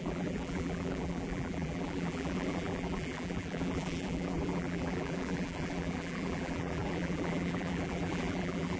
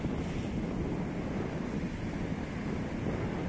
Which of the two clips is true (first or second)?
second